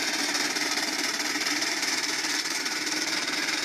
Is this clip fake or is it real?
fake